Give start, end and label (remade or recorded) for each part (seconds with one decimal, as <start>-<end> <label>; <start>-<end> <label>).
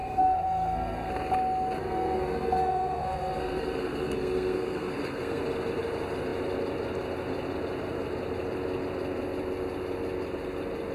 0.0-1.1 remade; 1.1-1.8 recorded; 1.8-5.4 remade; 5.4-10.9 recorded